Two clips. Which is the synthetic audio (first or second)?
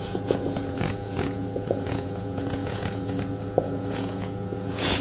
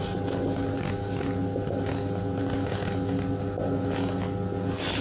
first